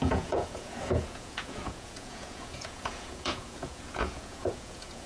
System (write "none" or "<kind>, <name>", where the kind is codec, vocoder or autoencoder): vocoder, Vocos